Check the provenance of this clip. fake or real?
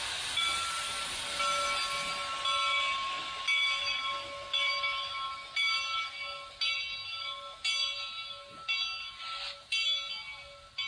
real